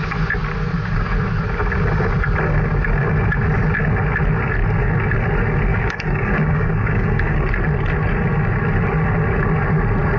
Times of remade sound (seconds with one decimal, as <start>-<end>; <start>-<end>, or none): 5.7-7.5